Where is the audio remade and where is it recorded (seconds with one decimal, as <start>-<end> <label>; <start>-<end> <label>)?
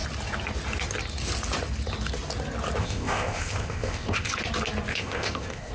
0.0-2.8 recorded; 2.8-4.4 remade; 4.4-4.9 recorded; 4.9-5.7 remade